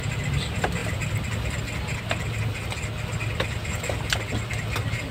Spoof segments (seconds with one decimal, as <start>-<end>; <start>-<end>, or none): none